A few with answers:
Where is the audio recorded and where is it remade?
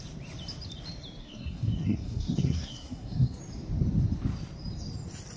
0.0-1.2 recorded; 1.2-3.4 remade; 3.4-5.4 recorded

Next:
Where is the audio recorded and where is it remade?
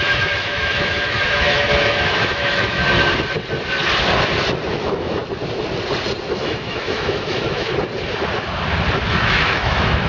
0.0-2.8 remade; 2.8-4.7 recorded; 4.7-5.2 remade; 5.2-6.3 recorded; 6.3-7.7 remade; 7.7-9.1 recorded; 9.1-10.1 remade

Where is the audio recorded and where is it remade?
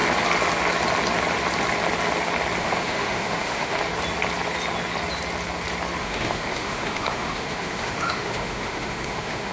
0.0-2.6 recorded; 2.6-3.8 remade; 3.8-6.0 recorded; 6.0-9.5 remade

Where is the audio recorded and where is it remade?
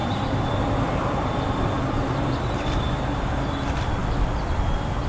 0.0-5.1 recorded